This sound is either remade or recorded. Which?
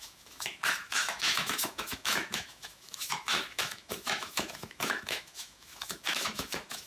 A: remade